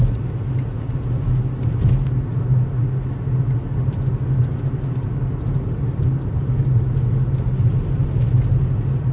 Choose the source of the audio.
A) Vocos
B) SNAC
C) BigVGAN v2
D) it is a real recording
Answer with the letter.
D